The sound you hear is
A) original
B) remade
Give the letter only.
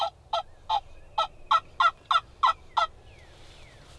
A